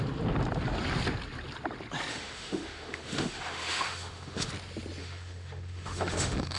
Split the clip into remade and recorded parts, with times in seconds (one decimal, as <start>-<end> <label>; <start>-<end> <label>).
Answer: 0.0-2.1 recorded; 2.1-4.5 remade; 4.5-5.0 recorded; 5.0-6.6 remade